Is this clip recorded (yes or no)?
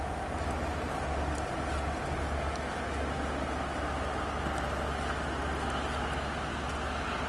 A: yes